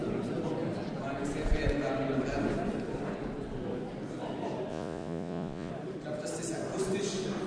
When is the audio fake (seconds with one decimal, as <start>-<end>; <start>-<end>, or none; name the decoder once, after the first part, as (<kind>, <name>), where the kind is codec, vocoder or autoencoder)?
4.7-5.7 (vocoder, Vocos)